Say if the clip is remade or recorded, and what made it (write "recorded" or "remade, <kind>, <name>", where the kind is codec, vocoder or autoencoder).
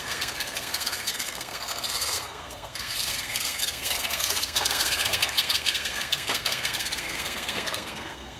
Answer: remade, codec, SNAC